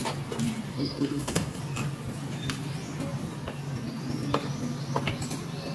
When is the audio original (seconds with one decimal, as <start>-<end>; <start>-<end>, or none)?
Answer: 0.0-0.7; 1.6-5.7

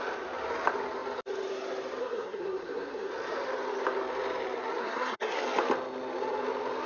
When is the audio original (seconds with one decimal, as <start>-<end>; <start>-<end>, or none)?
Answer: 0.0-2.0; 3.1-4.8; 5.4-6.9

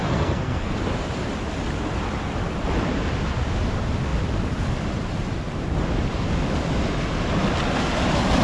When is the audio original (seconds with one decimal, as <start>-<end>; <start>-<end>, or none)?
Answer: 0.7-8.4

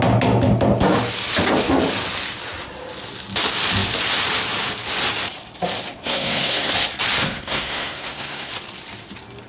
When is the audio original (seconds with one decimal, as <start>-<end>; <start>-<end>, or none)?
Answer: 0.0-5.9; 6.7-7.2; 8.5-9.5

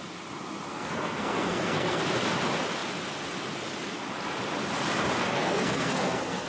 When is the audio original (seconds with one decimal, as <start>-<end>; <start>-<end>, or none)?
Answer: 0.0-0.7; 2.0-5.2